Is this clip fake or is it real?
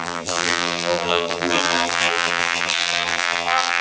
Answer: fake